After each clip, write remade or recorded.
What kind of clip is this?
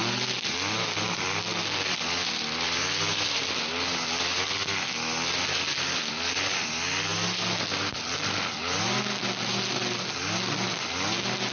recorded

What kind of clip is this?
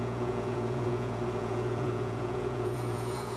remade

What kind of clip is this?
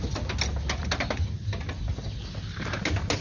recorded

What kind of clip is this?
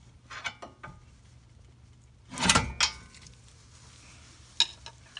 recorded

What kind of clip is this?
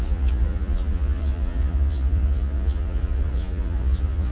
remade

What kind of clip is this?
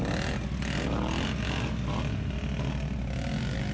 recorded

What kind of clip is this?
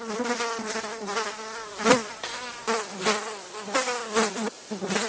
recorded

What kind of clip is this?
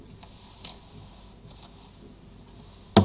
recorded